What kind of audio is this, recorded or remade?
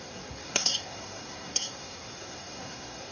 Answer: remade